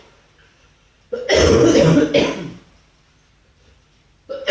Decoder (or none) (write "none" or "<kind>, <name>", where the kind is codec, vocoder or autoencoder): none